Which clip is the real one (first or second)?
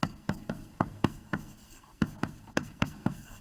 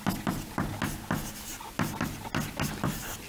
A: second